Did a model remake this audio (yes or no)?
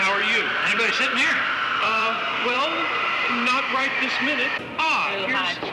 yes